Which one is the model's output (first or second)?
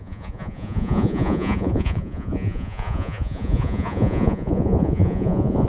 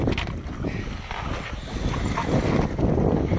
first